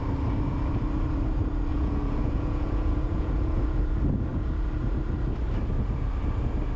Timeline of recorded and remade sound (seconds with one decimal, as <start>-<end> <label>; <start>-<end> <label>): 0.0-1.7 recorded; 1.7-3.8 remade; 3.8-6.8 recorded